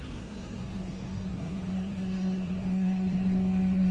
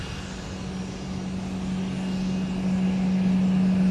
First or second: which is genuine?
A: second